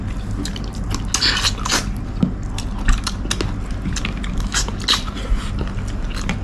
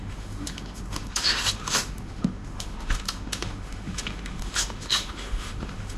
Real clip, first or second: first